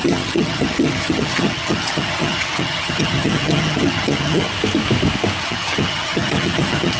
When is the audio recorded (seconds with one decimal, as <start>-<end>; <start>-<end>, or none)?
4.5-5.4